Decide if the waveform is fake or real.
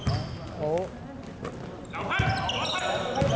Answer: real